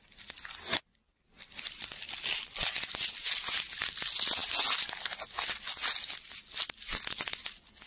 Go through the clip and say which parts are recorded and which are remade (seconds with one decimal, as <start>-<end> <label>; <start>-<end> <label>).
0.0-7.9 recorded